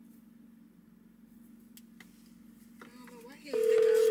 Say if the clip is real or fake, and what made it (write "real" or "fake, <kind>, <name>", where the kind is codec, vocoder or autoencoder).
real